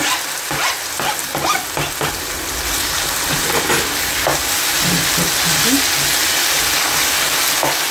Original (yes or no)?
yes